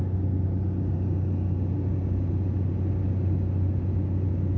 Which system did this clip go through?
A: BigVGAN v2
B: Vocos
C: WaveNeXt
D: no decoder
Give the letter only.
D